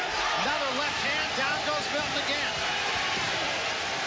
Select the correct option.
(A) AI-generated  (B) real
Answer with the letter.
B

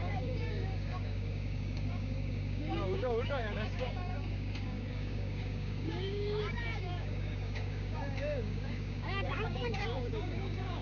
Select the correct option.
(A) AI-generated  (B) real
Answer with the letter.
A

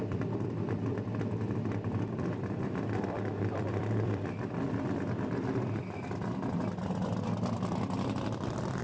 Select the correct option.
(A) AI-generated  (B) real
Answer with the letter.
A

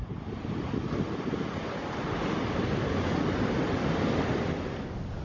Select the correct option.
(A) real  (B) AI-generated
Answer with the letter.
A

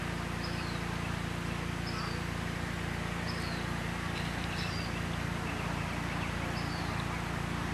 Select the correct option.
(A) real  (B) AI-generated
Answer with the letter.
A